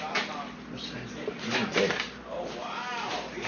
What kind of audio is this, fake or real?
real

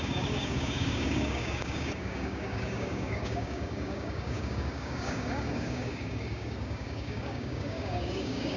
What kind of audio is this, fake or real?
fake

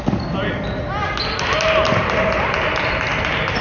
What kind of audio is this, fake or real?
real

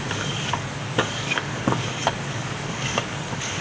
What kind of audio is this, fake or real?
fake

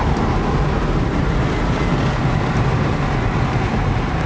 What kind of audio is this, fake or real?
real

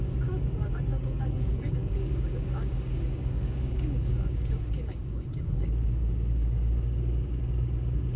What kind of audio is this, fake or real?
fake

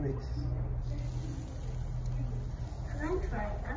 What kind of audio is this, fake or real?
real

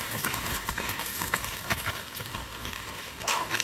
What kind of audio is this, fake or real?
fake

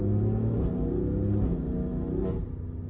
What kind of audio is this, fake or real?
real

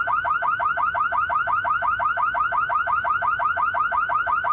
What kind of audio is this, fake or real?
real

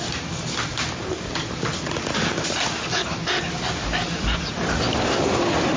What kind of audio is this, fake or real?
real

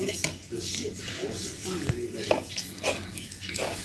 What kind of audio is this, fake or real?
fake